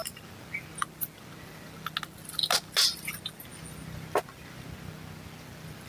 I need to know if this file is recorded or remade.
recorded